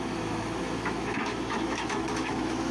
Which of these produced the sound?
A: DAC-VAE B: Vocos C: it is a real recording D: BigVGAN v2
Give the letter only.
A